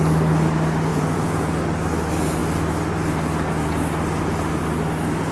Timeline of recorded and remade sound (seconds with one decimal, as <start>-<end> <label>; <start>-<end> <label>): 0.0-0.9 recorded; 0.9-1.5 remade; 1.5-5.3 recorded